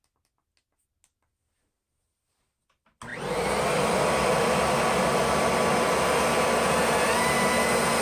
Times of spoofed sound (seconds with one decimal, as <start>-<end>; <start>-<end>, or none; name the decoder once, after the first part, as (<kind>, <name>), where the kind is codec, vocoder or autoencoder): none